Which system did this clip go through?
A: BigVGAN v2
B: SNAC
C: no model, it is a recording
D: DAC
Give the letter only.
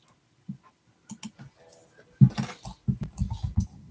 C